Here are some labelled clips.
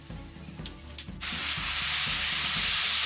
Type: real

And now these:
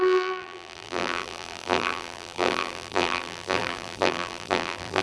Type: fake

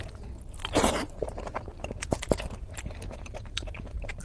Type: fake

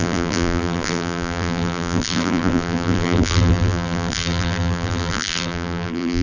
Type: fake